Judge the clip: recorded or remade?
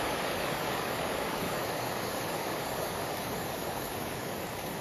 remade